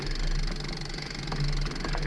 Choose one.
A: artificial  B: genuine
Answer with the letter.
B